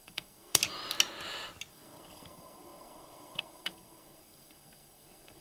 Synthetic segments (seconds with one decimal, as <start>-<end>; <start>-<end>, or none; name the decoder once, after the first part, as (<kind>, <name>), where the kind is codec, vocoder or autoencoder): 0.0-0.6 (codec, SNAC); 1.7-5.4